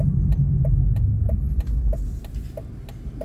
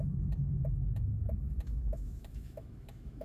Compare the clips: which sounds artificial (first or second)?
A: second